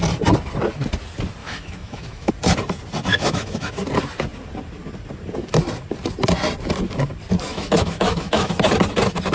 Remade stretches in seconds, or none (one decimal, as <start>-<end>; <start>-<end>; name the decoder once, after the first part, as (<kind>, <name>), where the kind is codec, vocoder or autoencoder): 1.4-2.3 (autoencoder, DAC-VAE); 3.1-3.8; 7.5-8.5